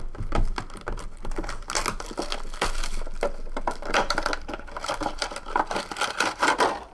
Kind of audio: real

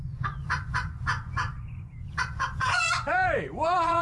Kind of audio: fake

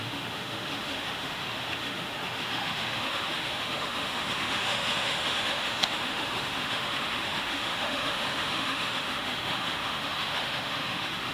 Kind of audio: fake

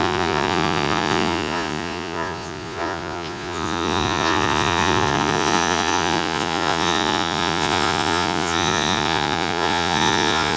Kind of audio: fake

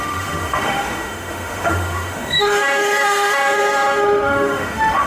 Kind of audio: fake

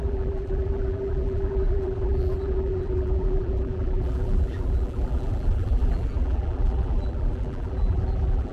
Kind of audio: fake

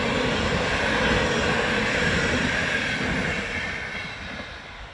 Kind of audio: real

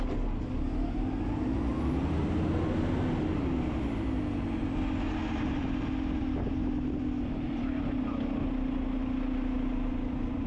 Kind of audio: real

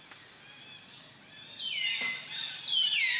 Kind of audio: real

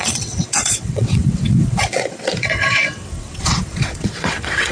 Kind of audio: fake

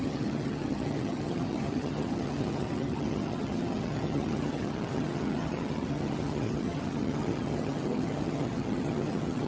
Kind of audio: fake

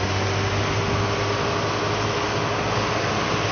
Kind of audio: real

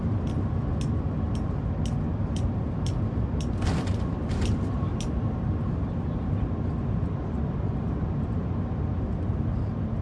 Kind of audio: real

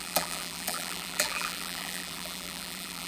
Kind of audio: fake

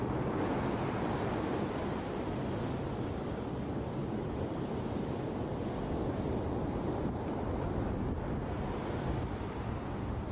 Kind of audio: fake